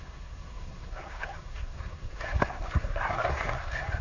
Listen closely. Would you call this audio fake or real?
fake